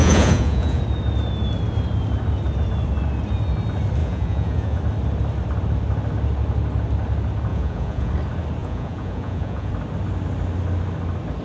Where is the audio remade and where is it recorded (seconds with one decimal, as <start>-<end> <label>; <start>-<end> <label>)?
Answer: 0.0-0.8 remade; 0.8-4.0 recorded; 4.0-4.8 remade; 4.8-7.5 recorded; 7.5-8.1 remade; 8.1-8.6 recorded; 8.6-9.7 remade; 9.7-11.4 recorded